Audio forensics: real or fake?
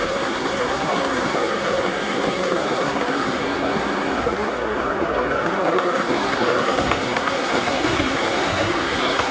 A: fake